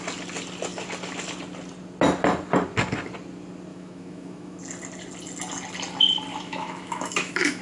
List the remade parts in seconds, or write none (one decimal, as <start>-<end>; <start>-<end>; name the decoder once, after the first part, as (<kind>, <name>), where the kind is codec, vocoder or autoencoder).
3.7-4.6 (autoencoder, DAC-VAE); 6.3-7.6